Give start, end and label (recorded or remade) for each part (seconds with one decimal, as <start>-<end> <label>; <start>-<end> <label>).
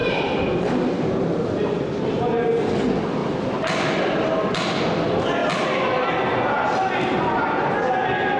0.0-8.4 recorded